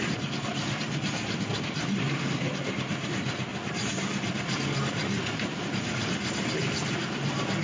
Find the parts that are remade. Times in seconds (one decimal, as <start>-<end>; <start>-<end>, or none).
none